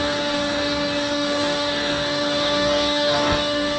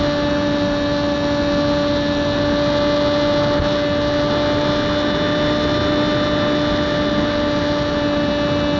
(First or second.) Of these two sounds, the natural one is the second